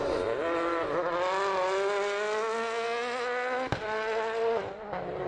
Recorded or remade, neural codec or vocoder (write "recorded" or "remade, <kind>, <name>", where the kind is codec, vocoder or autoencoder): recorded